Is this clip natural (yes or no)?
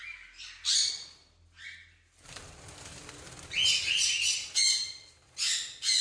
yes